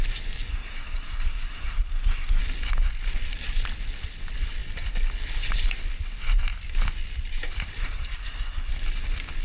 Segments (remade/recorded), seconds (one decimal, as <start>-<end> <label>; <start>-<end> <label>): 0.0-0.5 recorded; 0.5-2.4 remade; 2.4-7.8 recorded; 7.8-8.7 remade; 8.7-9.4 recorded